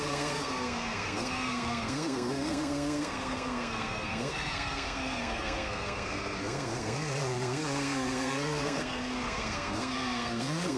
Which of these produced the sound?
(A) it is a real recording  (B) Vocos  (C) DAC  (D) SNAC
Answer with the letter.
D